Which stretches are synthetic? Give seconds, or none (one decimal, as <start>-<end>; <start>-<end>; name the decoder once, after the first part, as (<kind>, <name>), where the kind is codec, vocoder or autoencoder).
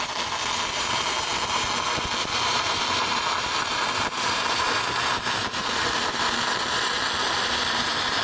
2.2-6.2 (vocoder, BigVGAN v2); 7.2-8.2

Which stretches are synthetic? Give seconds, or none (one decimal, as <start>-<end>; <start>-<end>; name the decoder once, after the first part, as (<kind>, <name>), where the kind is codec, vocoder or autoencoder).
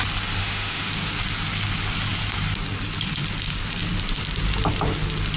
0.4-0.9 (autoencoder, DAC-VAE)